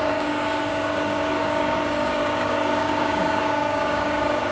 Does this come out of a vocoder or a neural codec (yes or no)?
yes